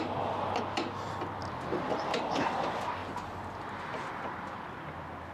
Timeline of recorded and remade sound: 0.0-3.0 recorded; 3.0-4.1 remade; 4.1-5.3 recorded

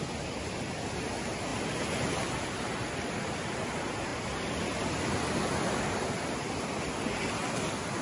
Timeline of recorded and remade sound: 0.0-8.0 recorded

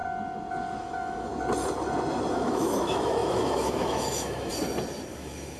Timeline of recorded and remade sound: 0.0-0.8 recorded; 0.8-1.3 remade; 1.3-2.3 recorded; 2.3-4.5 remade; 4.5-5.1 recorded; 5.1-5.6 remade

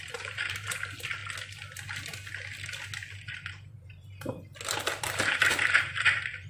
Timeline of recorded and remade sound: 0.0-1.2 remade; 1.2-3.3 recorded; 3.3-4.5 remade; 4.5-5.0 recorded; 5.0-6.5 remade

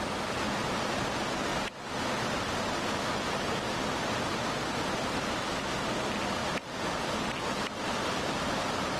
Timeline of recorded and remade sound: 0.0-9.0 recorded

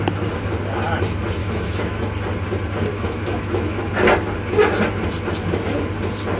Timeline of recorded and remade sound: 0.0-1.4 recorded; 1.4-2.0 remade; 2.0-2.9 recorded; 2.9-3.9 remade; 3.9-6.4 recorded

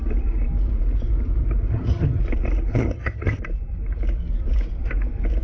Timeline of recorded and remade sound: 0.0-1.7 recorded; 1.7-2.2 remade; 2.2-2.7 recorded; 2.7-3.4 remade; 3.4-5.4 recorded